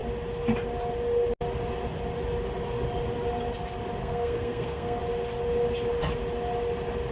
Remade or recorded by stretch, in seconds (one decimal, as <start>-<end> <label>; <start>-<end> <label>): 0.0-4.0 recorded; 4.0-5.0 remade; 5.0-7.1 recorded